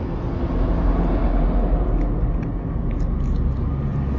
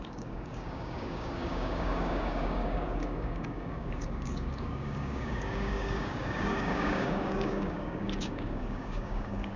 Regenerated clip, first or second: second